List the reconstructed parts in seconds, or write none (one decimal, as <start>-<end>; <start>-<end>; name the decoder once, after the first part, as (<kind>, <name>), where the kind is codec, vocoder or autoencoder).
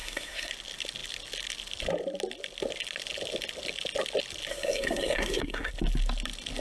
0.0-0.5 (codec, SNAC); 4.5-5.7